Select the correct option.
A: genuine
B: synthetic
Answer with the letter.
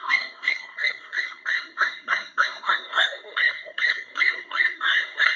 B